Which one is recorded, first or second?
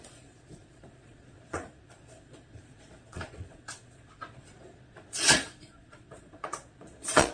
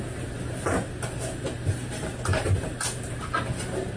second